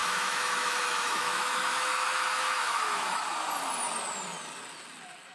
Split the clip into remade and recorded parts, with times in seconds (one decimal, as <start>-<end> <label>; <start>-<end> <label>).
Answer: 0.0-3.2 remade; 3.2-5.3 recorded